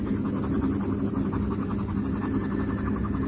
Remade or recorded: recorded